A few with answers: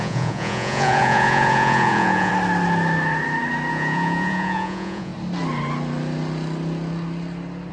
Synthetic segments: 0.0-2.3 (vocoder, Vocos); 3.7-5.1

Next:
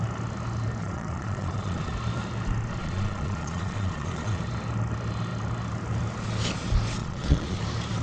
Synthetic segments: 0.8-1.9 (vocoder, Vocos); 2.8-4.4; 7.0-7.6

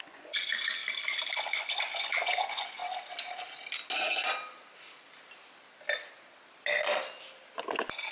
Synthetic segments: 0.0-0.8 (vocoder, Vocos); 1.4-2.8